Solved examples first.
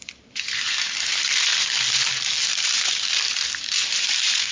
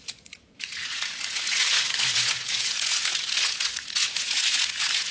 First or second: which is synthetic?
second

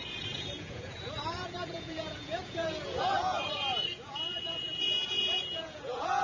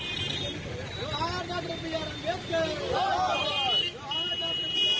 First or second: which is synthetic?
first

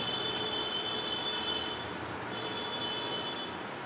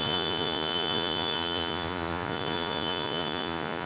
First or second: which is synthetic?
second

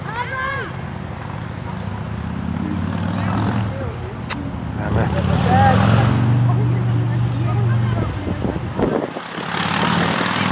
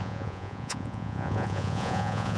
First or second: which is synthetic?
second